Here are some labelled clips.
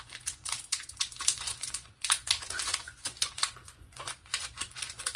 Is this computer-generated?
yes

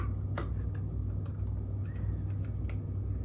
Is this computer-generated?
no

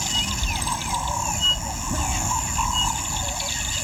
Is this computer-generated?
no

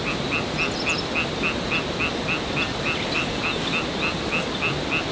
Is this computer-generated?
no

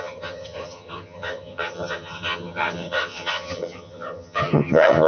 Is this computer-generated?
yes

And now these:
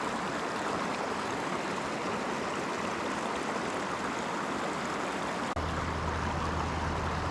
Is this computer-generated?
no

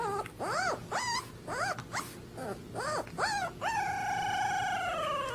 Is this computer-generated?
no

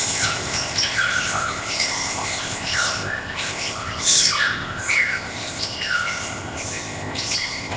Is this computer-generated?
yes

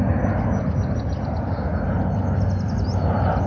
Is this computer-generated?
no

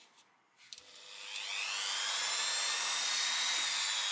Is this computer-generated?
no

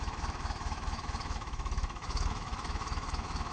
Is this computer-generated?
yes